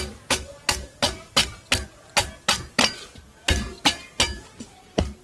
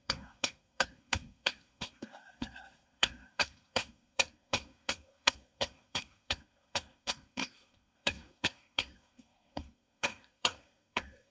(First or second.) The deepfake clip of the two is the second